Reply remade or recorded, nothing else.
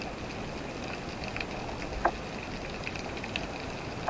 recorded